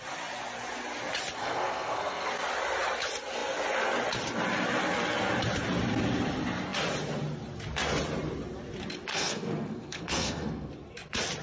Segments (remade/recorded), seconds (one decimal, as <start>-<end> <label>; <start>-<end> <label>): 0.0-1.4 recorded; 1.4-2.3 remade; 2.3-9.1 recorded; 9.1-10.7 remade; 10.7-11.4 recorded